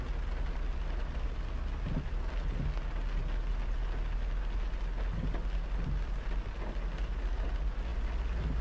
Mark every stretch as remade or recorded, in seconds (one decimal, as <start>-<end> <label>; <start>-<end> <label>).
0.0-8.6 recorded